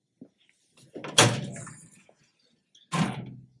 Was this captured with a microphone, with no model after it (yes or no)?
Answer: yes